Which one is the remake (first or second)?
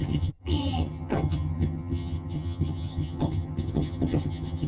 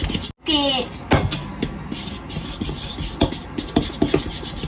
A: first